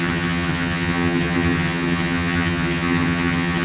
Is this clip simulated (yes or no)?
yes